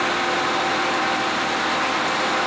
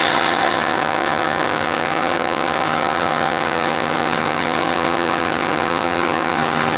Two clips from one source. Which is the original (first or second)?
first